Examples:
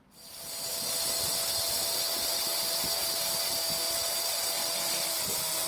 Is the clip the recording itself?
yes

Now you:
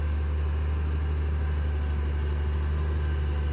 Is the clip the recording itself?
yes